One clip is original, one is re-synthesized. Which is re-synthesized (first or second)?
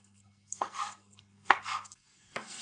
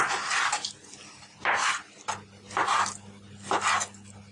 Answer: first